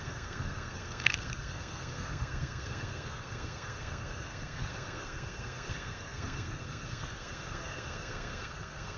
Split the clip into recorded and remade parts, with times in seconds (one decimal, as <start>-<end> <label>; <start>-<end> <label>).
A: 0.0-9.0 remade